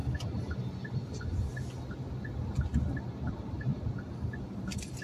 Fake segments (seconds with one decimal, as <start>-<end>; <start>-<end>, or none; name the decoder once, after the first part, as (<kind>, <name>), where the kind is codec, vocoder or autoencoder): none